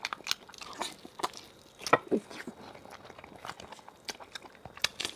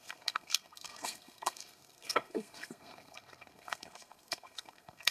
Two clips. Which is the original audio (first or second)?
first